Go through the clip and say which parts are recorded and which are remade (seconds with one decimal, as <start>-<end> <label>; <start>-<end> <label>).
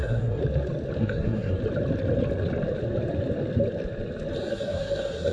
0.0-0.4 remade; 0.4-1.0 recorded; 1.0-1.6 remade; 1.6-4.5 recorded; 4.5-5.3 remade